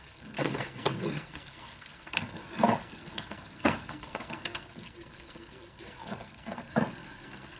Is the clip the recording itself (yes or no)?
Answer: no